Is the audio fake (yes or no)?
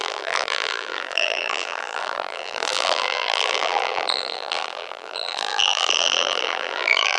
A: yes